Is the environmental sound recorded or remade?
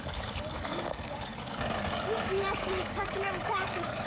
remade